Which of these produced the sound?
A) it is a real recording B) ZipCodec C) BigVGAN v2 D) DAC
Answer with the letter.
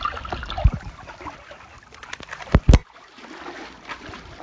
A